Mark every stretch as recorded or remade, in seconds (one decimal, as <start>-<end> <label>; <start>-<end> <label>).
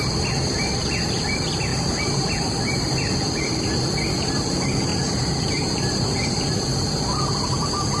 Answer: 0.0-1.7 recorded; 1.7-3.9 remade; 3.9-4.9 recorded; 4.9-6.3 remade; 6.3-8.0 recorded